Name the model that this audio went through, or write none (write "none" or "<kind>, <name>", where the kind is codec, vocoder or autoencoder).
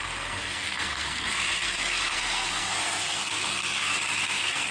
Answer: codec, SNAC